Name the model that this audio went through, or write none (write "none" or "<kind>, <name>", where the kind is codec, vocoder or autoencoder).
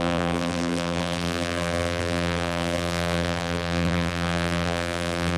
vocoder, BigVGAN v2